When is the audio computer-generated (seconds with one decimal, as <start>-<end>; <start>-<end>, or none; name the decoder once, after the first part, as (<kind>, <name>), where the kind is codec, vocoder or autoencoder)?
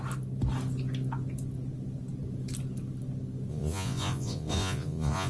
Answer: 3.5-5.3 (vocoder, Vocos)